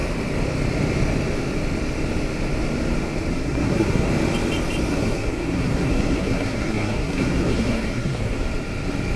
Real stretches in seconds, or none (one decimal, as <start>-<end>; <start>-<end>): 0.0-3.3; 4.1-4.9; 8.4-9.2